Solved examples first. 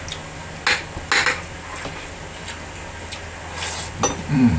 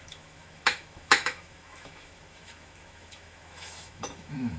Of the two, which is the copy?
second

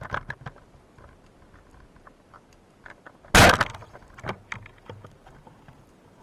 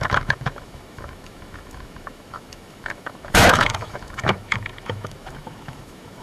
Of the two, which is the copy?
second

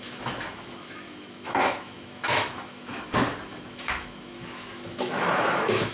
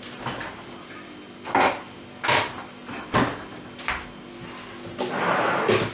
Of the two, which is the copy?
first